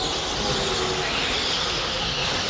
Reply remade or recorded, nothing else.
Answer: recorded